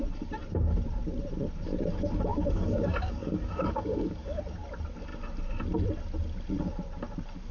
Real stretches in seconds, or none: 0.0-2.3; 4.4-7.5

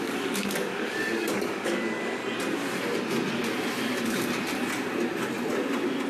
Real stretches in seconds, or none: 2.2-6.1

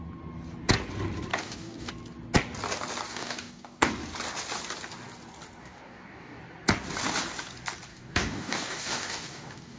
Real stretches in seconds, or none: 0.0-1.3; 1.9-3.1; 3.9-5.6; 6.4-7.9